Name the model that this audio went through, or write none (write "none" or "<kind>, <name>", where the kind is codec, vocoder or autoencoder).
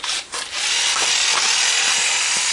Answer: none